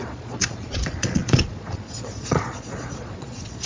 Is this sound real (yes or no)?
no